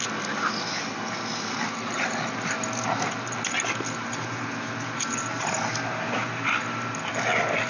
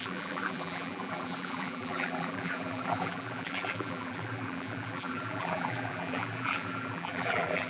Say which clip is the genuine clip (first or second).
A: first